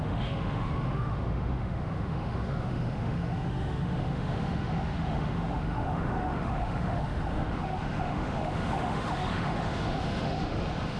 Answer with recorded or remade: remade